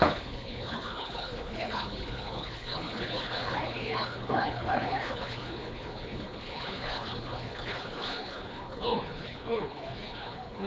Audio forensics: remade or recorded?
remade